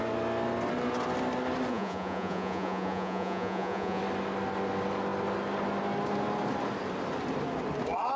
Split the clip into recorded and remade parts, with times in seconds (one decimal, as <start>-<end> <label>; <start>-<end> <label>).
0.0-1.7 recorded; 1.7-4.0 remade; 4.0-8.2 recorded